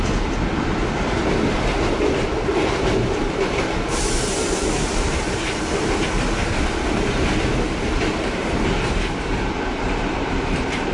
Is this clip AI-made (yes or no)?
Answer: no